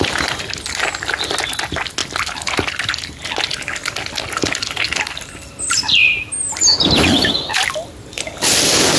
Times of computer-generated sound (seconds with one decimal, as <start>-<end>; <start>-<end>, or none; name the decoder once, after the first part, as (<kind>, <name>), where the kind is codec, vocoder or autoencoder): none